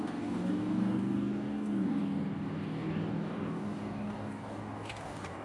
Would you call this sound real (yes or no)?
no